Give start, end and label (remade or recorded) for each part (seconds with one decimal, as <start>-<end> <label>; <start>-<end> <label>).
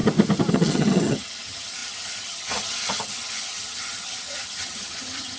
0.0-0.5 recorded; 0.5-5.4 remade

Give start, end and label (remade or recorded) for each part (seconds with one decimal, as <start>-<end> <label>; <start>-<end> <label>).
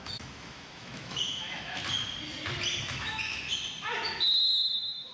0.0-1.8 remade; 1.8-2.8 recorded; 2.8-3.5 remade; 3.5-4.5 recorded; 4.5-5.1 remade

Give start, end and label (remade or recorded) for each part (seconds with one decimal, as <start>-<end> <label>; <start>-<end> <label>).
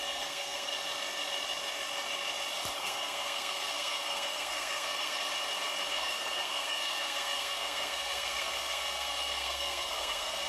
0.0-0.7 remade; 0.7-2.8 recorded; 2.8-5.2 remade; 5.2-5.9 recorded; 5.9-10.5 remade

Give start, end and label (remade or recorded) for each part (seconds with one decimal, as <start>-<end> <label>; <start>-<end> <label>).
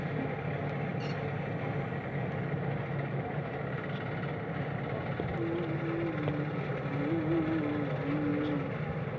0.0-9.2 recorded